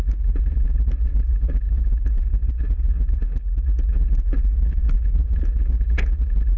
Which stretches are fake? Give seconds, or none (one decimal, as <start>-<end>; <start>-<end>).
0.0-3.2; 3.9-6.6